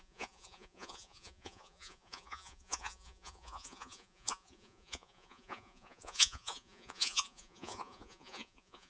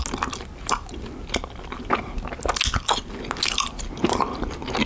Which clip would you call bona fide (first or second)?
second